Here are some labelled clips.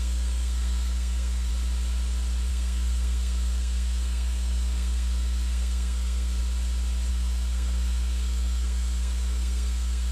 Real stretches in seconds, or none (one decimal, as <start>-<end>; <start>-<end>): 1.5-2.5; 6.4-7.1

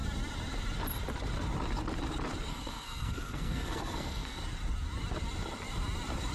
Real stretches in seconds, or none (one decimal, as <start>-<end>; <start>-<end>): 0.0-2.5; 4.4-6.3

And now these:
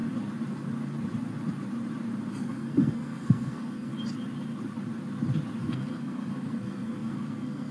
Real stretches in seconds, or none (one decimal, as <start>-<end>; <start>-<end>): 0.0-2.3; 3.9-5.6

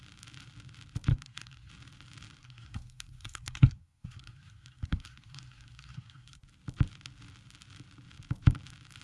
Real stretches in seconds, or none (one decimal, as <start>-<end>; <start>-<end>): 0.0-1.1; 1.7-2.4; 6.4-9.0

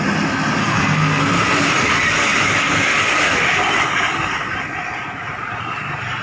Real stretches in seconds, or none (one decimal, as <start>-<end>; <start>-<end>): 0.0-0.6; 1.2-6.2

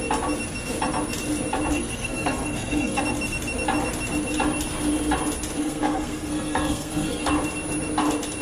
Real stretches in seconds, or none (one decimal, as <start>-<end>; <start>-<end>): 0.0-1.7; 3.0-5.6; 7.3-8.4